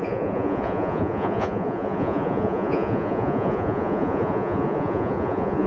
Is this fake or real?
fake